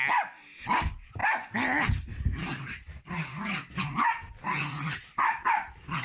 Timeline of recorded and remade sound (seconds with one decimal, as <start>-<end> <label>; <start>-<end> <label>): 0.0-6.0 recorded